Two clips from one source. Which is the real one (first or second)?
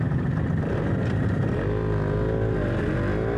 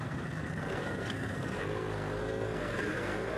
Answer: first